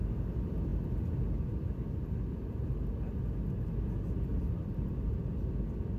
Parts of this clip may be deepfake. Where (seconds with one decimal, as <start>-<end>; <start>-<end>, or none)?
4.3-5.1